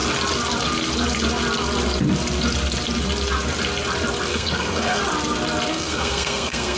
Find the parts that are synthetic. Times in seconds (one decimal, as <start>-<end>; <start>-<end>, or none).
4.3-5.0; 5.7-6.8

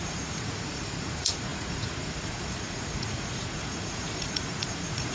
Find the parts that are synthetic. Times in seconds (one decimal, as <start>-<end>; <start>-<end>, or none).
0.0-5.1

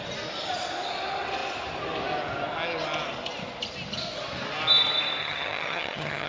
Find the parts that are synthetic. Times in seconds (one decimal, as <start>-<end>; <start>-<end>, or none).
5.2-6.3

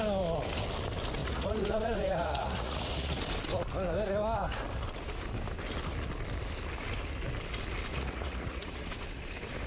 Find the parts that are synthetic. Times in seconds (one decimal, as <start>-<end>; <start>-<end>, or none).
1.2-3.2; 7.9-8.9

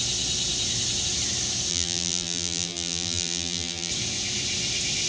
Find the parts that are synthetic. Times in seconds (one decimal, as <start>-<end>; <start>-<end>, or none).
1.7-3.9

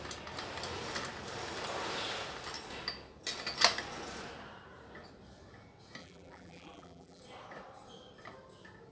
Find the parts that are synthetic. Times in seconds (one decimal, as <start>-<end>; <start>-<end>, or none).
6.0-7.2

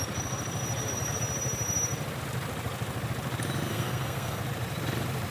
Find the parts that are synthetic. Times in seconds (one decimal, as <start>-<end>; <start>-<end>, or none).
3.7-4.4

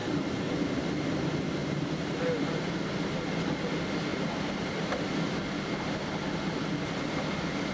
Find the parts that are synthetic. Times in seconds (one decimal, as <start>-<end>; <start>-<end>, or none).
1.6-2.8; 4.1-5.1